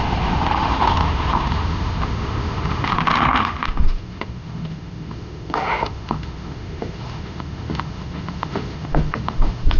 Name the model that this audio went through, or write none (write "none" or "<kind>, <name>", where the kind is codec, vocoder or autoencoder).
autoencoder, DAC-VAE